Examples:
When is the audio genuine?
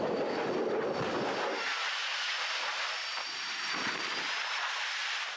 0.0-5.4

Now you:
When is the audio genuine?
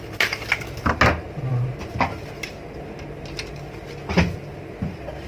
0.0-5.3